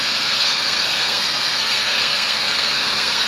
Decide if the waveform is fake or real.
fake